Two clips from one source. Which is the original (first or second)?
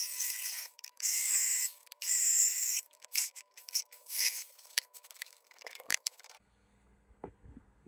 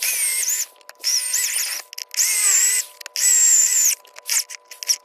second